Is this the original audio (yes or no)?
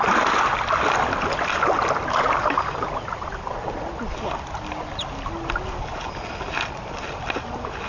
yes